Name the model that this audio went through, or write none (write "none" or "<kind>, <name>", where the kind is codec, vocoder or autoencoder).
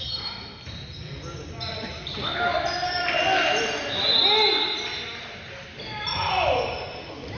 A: none